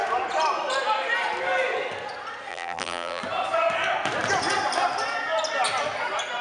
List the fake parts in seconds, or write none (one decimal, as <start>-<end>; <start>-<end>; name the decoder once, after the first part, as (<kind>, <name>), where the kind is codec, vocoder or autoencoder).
2.5-3.2 (vocoder, BigVGAN v2)